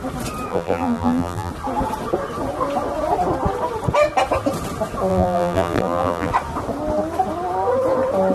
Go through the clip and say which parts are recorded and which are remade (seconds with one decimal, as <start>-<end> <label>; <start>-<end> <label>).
0.0-0.5 recorded; 0.5-1.5 remade; 1.5-5.1 recorded; 5.1-6.3 remade; 6.3-8.3 recorded